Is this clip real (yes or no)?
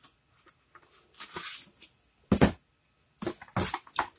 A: yes